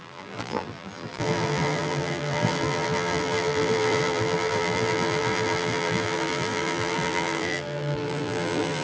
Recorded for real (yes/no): no